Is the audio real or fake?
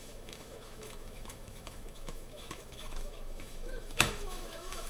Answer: fake